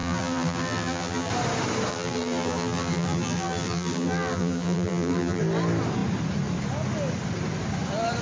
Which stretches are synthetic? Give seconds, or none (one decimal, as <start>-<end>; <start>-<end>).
0.0-1.3; 1.9-5.4